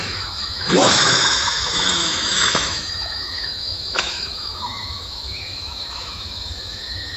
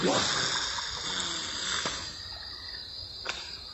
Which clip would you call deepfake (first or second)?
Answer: first